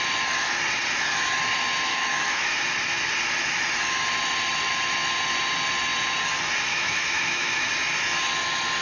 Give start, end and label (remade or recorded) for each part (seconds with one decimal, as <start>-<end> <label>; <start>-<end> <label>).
0.0-1.9 recorded; 1.9-2.6 remade; 2.6-6.7 recorded; 6.7-7.7 remade; 7.7-8.8 recorded